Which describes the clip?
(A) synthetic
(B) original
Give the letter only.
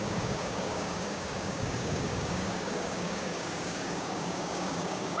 A